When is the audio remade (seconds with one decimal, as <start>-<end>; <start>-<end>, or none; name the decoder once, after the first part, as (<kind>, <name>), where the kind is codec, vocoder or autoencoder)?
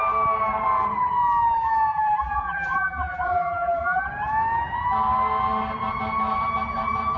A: 1.9-4.1 (vocoder, BigVGAN v2)